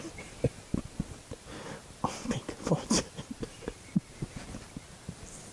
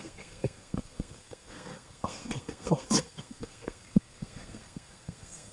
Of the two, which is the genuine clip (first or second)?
first